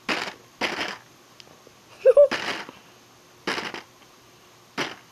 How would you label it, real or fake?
real